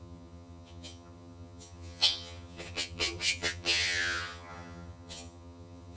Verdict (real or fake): fake